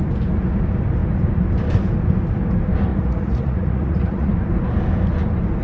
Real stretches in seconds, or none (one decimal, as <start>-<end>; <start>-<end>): 0.0-2.9; 4.3-5.6